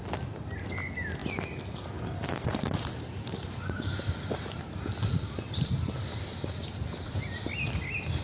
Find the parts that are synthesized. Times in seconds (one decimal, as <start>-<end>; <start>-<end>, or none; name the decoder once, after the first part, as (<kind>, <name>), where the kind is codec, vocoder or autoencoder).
2.5-7.3 (vocoder, BigVGAN v2)

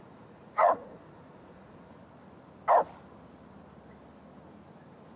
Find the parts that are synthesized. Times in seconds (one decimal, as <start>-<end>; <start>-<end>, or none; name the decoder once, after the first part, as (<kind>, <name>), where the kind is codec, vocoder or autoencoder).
0.0-2.0 (vocoder, Vocos)

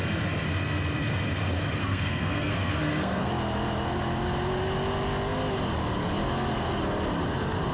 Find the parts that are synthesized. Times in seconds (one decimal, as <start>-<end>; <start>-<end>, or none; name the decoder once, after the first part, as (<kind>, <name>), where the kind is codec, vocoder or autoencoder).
1.8-3.3 (codec, SNAC)

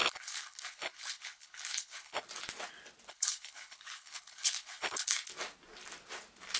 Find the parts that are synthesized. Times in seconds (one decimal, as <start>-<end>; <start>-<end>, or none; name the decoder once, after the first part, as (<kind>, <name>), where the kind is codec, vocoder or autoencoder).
0.0-2.2 (codec, HILCodec); 3.1-5.3

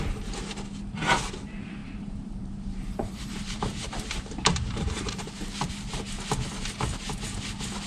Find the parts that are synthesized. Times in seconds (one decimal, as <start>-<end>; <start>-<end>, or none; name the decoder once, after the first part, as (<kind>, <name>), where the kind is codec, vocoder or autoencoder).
1.8-5.7 (vocoder, BigVGAN v2)

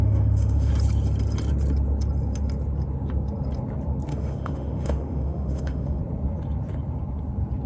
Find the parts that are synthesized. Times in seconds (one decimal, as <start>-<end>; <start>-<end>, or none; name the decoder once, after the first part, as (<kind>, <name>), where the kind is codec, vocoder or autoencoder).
0.0-0.7 (autoencoder, DAC-VAE); 4.1-6.0

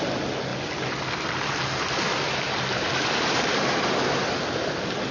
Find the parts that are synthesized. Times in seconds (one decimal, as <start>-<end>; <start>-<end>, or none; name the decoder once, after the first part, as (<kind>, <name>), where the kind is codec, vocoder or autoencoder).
none

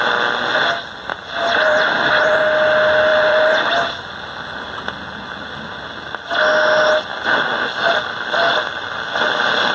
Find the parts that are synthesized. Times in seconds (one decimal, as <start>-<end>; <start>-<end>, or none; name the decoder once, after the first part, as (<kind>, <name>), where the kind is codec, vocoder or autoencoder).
1.1-2.4 (vocoder, BigVGAN v2); 3.1-4.0